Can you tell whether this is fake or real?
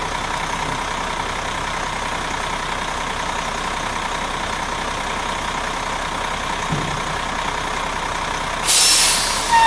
real